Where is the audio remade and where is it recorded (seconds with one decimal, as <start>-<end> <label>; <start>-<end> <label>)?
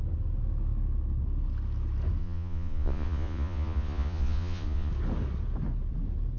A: 0.0-2.2 recorded; 2.2-4.9 remade; 4.9-6.4 recorded